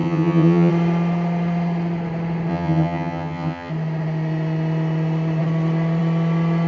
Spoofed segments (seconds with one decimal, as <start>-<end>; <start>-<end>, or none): 0.0-0.7; 2.5-3.7